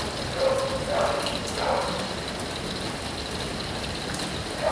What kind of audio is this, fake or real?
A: real